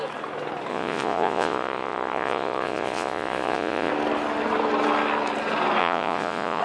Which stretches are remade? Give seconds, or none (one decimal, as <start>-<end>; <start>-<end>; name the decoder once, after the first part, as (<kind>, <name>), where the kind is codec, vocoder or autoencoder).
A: 0.7-3.9 (vocoder, Vocos); 5.8-6.6